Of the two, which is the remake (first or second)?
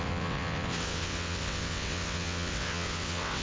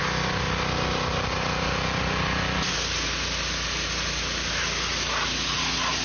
first